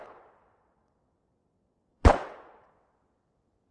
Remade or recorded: remade